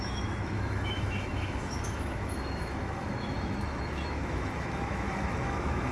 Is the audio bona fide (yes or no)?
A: no